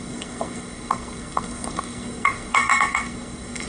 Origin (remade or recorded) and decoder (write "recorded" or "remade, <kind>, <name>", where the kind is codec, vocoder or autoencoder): remade, codec, SNAC